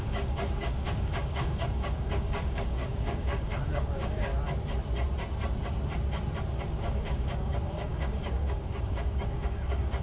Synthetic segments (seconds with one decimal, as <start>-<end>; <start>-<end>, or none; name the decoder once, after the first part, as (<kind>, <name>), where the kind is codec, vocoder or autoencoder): 0.0-4.3 (codec, DAC); 6.7-10.0